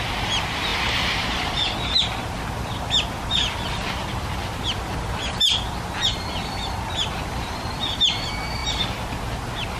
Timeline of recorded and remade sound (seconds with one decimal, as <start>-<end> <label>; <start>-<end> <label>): 0.0-9.8 recorded